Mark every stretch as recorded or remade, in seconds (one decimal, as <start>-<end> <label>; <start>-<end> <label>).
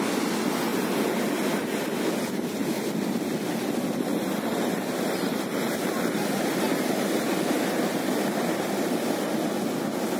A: 0.0-4.5 recorded; 4.5-9.3 remade; 9.3-10.2 recorded